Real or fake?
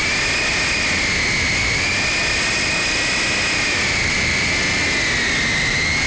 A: real